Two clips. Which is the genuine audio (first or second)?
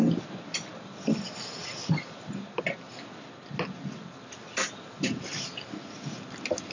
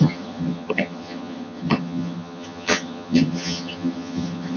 first